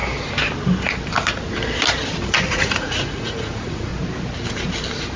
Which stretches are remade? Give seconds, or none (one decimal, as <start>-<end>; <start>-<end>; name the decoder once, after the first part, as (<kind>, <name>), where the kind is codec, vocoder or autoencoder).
2.5-3.9 (vocoder, Vocos)

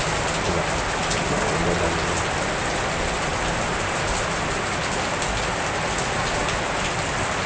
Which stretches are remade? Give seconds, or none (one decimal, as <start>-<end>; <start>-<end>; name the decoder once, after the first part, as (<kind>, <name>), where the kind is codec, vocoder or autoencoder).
none

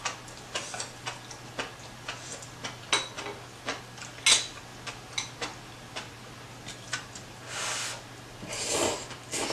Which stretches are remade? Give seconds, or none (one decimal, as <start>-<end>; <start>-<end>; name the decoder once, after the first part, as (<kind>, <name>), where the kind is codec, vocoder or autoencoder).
none

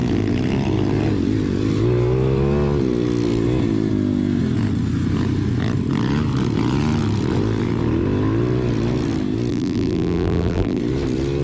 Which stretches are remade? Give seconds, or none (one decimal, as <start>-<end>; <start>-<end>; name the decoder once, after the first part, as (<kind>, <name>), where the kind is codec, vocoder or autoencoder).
9.5-10.8 (vocoder, BigVGAN v2)

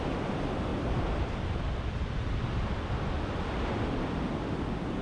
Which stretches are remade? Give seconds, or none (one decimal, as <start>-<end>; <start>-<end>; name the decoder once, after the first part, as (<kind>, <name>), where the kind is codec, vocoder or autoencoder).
0.0-5.0 (vocoder, BigVGAN v2)